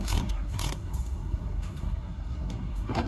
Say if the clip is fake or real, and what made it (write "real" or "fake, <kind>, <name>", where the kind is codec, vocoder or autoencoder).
fake, codec, SNAC